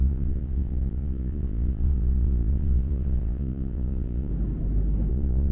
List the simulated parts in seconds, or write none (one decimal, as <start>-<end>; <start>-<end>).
0.0-4.3; 5.1-5.5